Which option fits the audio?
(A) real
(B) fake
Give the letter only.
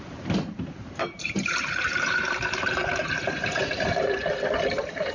B